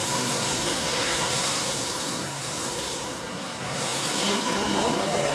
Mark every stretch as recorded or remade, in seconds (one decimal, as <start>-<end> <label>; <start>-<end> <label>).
0.0-5.3 remade